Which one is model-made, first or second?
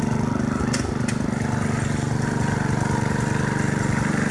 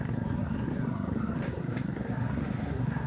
second